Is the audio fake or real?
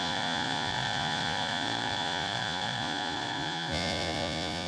fake